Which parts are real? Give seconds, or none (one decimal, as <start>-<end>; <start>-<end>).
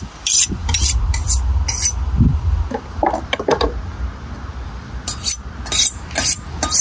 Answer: 0.0-6.8